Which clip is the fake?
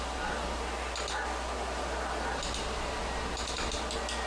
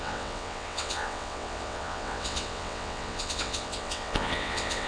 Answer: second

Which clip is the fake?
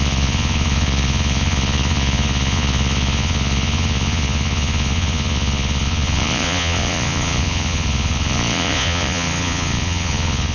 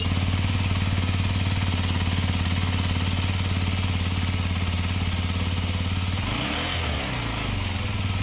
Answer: first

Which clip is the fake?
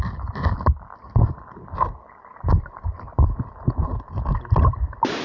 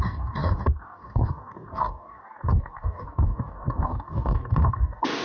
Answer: second